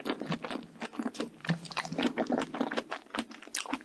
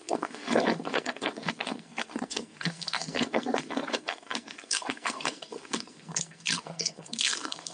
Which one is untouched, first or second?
first